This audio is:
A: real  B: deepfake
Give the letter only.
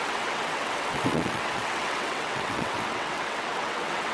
B